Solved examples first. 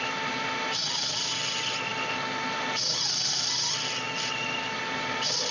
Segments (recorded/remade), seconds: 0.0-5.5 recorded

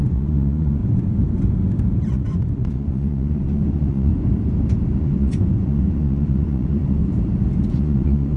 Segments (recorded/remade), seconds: 0.0-0.8 remade; 0.8-2.1 recorded; 2.1-4.1 remade; 4.1-5.0 recorded; 5.0-7.0 remade; 7.0-7.7 recorded; 7.7-8.4 remade

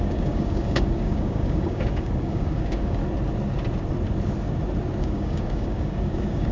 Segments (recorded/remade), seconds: 0.0-3.0 remade; 3.0-5.0 recorded; 5.0-6.5 remade

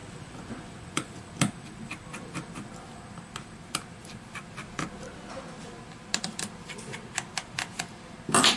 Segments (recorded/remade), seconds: 0.0-1.2 remade; 1.2-8.6 recorded

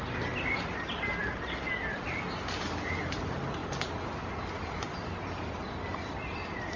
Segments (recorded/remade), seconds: 0.0-6.8 recorded